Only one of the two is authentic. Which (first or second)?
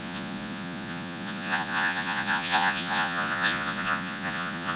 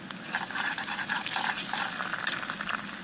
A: second